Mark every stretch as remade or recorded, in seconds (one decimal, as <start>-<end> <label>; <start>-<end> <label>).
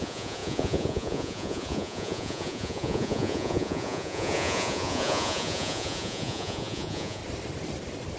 0.0-7.2 remade; 7.2-8.2 recorded